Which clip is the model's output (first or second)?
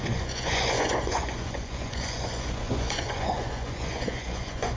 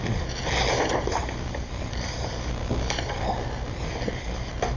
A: first